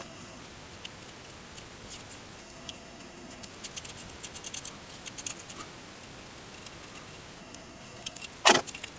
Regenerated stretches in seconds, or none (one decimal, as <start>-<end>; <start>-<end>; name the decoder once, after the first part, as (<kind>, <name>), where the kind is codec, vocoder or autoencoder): 0.0-0.4 (codec, SNAC); 2.4-3.5; 7.4-8.2